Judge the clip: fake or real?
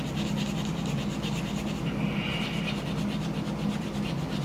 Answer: real